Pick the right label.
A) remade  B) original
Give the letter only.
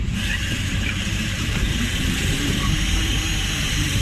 A